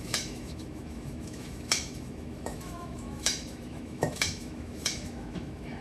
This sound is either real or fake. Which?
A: fake